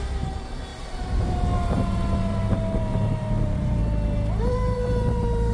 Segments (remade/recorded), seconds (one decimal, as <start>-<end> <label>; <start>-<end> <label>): 0.0-3.8 remade; 3.8-4.5 recorded; 4.5-5.5 remade